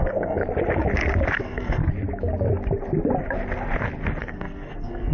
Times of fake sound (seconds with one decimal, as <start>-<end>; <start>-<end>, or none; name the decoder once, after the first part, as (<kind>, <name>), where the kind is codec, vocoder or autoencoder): 0.0-0.4 (codec, SNAC); 1.4-1.8; 4.2-5.1